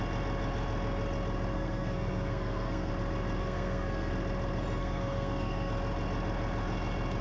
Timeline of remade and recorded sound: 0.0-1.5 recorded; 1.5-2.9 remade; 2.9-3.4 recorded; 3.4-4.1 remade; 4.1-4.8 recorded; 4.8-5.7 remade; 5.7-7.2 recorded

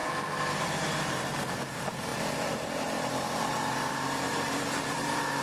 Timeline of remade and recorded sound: 0.0-0.6 recorded; 0.6-5.4 remade

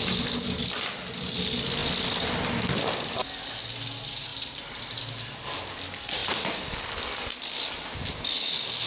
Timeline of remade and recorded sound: 0.0-4.3 recorded; 4.3-5.0 remade; 5.0-6.2 recorded; 6.2-8.3 remade; 8.3-8.9 recorded

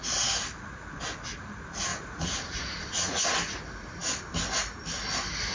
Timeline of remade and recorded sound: 0.0-1.9 recorded; 1.9-3.2 remade; 3.2-5.5 recorded

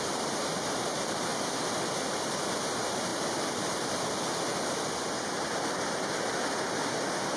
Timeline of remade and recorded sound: 0.0-7.4 recorded

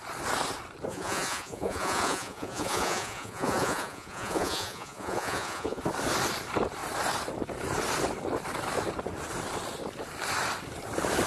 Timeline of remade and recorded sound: 0.0-0.9 recorded; 0.9-5.8 remade; 5.8-11.3 recorded

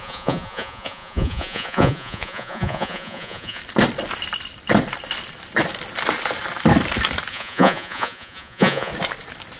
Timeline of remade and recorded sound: 0.0-3.6 remade; 3.6-7.3 recorded; 7.3-8.9 remade; 8.9-9.6 recorded

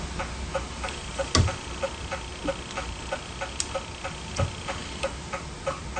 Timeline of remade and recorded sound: 0.0-6.0 recorded